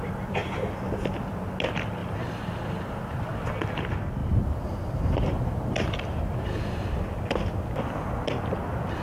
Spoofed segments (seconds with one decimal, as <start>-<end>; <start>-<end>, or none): 2.0-3.3; 4.2-6.6